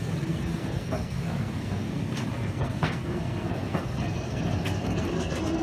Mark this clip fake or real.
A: fake